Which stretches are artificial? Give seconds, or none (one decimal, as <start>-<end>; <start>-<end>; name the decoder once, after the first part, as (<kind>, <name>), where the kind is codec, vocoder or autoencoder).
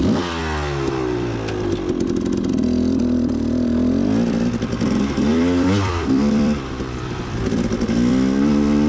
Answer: 0.0-0.4 (vocoder, BigVGAN v2); 2.5-8.9